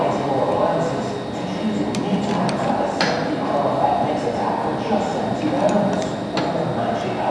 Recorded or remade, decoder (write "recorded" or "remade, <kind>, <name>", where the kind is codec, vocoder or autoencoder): recorded